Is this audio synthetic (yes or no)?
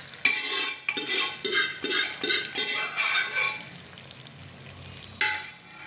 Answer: no